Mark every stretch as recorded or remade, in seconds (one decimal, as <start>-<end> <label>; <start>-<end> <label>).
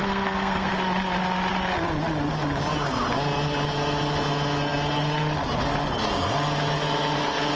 0.0-0.7 remade; 0.7-7.6 recorded